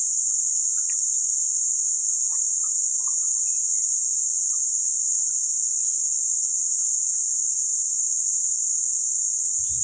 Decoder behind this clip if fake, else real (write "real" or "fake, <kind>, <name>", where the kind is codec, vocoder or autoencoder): real